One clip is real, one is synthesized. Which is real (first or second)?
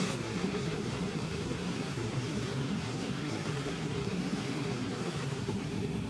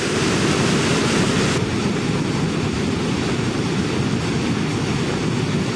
second